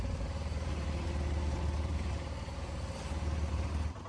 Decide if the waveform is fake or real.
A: fake